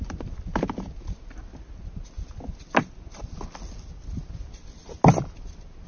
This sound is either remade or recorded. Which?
recorded